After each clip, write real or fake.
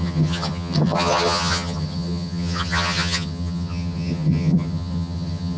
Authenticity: fake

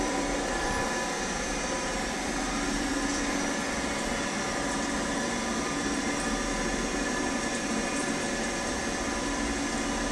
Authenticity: fake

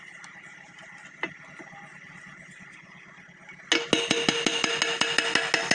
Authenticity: real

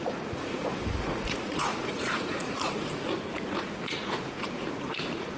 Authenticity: fake